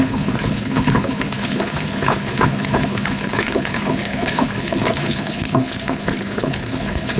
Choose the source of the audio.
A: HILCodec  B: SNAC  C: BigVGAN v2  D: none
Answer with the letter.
A